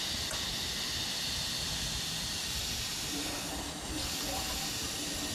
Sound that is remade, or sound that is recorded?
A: recorded